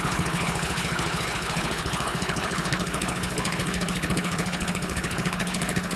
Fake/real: fake